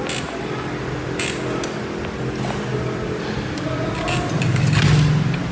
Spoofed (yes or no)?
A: no